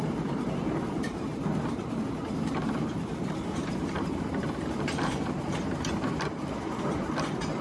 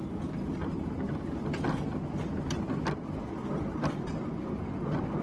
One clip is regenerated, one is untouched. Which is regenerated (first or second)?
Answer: first